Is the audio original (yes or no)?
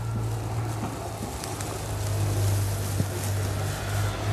yes